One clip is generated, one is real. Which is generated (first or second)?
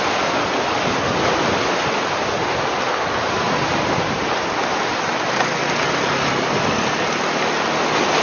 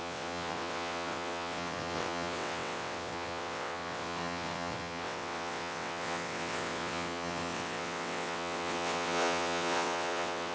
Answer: second